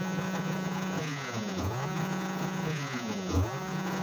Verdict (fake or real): fake